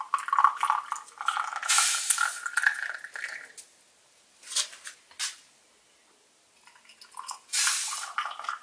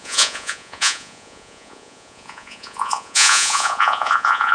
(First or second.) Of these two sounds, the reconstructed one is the second